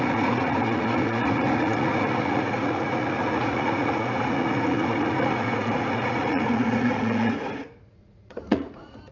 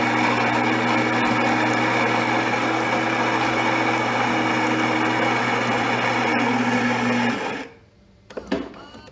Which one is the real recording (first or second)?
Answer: second